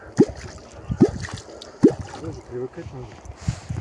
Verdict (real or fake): real